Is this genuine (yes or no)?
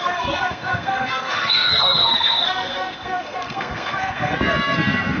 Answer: no